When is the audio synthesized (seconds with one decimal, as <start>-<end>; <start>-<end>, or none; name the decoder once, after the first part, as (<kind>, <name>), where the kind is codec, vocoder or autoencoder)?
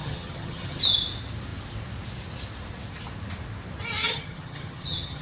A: 0.0-0.8 (vocoder, HiFi-GAN); 4.0-5.2